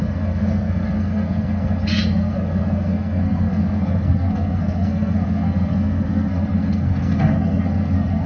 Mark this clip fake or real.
fake